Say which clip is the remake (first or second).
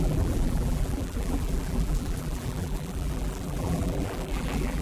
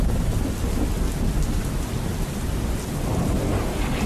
first